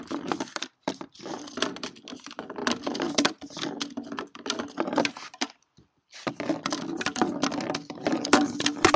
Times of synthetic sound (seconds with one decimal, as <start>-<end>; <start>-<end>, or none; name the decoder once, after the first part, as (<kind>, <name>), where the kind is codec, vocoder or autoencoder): none